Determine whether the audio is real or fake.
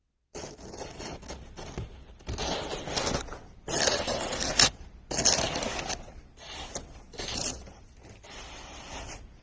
real